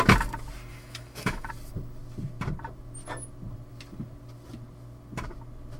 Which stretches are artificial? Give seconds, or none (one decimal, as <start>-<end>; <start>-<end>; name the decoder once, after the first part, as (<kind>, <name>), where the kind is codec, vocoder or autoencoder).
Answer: 0.7-1.5 (autoencoder, DAC-VAE)